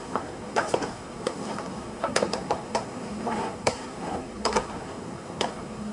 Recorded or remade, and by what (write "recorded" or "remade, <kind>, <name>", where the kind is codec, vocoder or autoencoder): remade, codec, SNAC